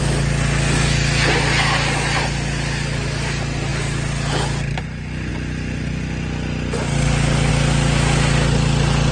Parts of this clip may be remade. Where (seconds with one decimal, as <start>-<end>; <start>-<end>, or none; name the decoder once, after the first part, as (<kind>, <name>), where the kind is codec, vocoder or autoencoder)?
none